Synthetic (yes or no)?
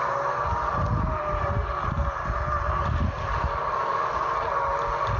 no